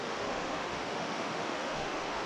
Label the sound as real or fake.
fake